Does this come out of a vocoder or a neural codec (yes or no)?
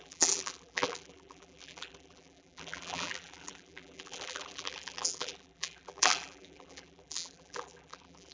yes